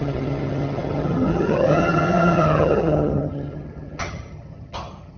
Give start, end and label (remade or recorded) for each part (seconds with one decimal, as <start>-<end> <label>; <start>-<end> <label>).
0.0-5.2 remade